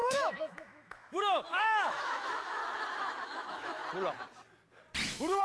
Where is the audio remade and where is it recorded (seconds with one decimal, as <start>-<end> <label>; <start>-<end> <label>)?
0.0-2.6 remade; 2.6-3.2 recorded; 3.2-3.8 remade; 3.8-5.0 recorded; 5.0-5.4 remade